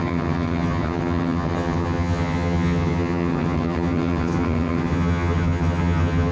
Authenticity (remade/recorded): remade